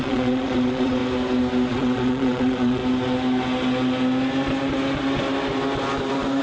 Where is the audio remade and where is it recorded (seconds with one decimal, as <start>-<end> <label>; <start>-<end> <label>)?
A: 0.0-1.0 remade; 1.0-1.7 recorded; 1.7-2.8 remade; 2.8-6.4 recorded